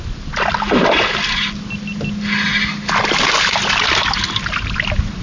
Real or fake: real